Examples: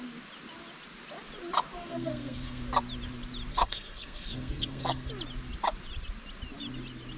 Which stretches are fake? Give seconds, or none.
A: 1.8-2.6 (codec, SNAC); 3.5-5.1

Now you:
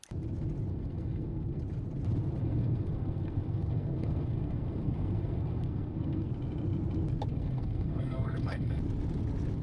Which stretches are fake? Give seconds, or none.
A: 0.7-1.6 (codec, SNAC); 2.4-6.3; 7.3-8.8

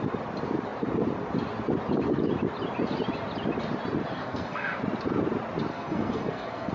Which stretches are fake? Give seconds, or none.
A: 4.1-4.8 (codec, SNAC); 5.7-6.7

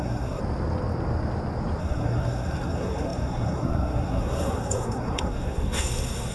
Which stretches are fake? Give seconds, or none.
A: 0.0-0.4 (codec, SNAC); 1.8-6.3